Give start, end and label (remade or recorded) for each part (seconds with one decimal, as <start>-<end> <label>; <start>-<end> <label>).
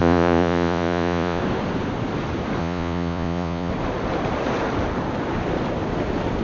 0.0-1.4 remade; 1.4-2.6 recorded; 2.6-3.7 remade; 3.7-6.4 recorded